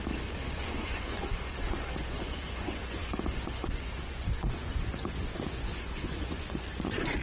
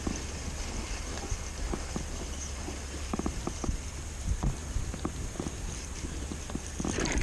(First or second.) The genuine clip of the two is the second